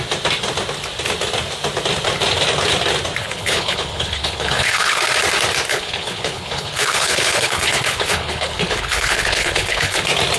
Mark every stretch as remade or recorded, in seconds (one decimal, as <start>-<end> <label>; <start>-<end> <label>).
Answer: 0.0-3.2 recorded; 3.2-5.0 remade; 5.0-5.7 recorded; 5.7-10.0 remade; 10.0-10.4 recorded